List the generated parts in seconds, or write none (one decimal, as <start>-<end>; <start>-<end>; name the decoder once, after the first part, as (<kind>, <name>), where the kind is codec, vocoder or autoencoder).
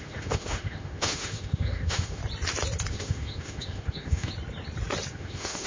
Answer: 0.0-2.2 (autoencoder, DAC-VAE); 2.9-4.3; 5.1-5.7